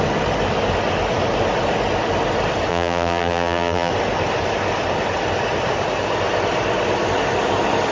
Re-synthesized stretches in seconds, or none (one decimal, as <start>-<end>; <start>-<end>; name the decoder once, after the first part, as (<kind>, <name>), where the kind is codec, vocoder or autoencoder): 2.7-3.9 (vocoder, BigVGAN v2)